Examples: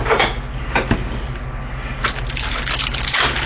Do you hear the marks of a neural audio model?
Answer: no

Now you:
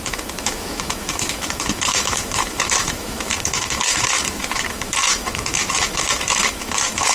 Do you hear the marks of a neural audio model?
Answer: yes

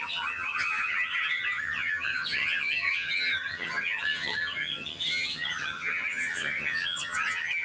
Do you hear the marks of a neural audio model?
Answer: yes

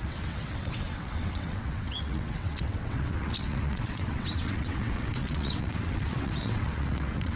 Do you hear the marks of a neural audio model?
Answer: yes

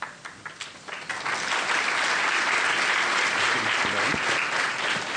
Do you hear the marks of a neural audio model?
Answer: no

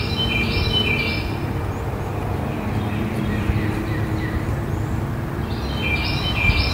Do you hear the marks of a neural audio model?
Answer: no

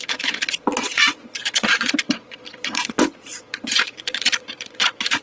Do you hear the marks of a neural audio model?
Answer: yes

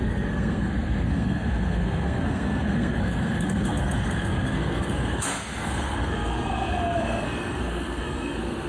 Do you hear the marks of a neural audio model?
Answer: yes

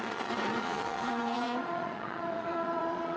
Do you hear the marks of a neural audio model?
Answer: yes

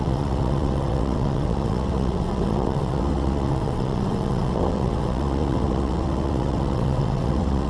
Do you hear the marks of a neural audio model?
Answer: yes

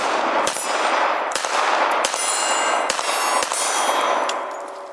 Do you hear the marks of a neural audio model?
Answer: yes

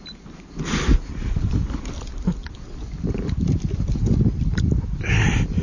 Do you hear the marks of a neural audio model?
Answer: no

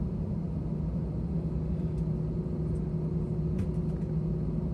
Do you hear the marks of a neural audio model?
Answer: no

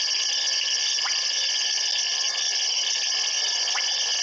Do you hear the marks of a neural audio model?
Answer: no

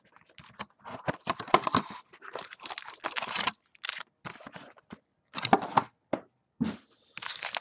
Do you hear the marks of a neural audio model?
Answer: no